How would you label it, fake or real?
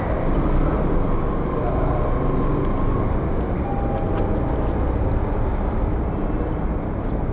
real